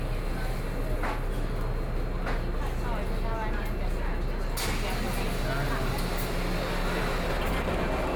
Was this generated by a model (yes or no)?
no